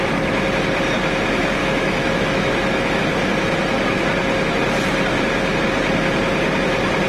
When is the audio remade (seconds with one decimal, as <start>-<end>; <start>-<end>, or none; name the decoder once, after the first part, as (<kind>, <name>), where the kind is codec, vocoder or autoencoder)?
1.6-3.0 (autoencoder, DAC-VAE)

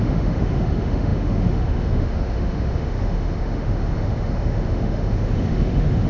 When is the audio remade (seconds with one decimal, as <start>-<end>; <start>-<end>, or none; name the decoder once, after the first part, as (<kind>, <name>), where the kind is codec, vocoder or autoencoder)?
0.0-6.1 (autoencoder, DAC-VAE)

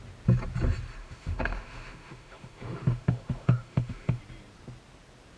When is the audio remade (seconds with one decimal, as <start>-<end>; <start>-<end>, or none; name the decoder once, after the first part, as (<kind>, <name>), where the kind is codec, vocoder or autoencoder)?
1.0-4.2 (autoencoder, DAC-VAE)

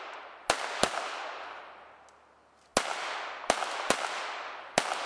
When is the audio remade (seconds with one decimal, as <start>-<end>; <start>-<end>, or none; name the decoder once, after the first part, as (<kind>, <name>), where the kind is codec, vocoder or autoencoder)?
none

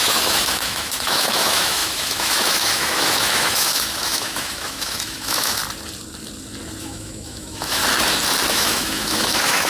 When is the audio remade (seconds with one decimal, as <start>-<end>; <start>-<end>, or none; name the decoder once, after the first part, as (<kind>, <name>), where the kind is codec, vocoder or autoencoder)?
0.0-5.6 (autoencoder, DAC-VAE); 6.8-7.8; 8.5-9.7